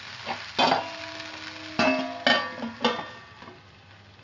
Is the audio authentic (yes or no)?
yes